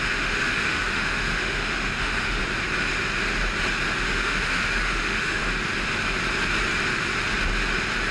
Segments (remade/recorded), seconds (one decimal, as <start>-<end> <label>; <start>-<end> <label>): 0.0-2.4 remade; 2.4-4.1 recorded; 4.1-5.4 remade; 5.4-8.1 recorded